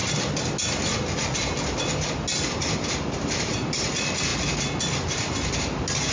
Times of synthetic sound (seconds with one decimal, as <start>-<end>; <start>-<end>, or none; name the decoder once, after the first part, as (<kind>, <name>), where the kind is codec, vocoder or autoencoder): none